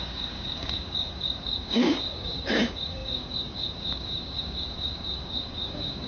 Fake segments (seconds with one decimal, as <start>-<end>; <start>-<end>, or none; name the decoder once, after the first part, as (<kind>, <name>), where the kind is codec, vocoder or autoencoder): 0.0-6.1 (codec, DAC)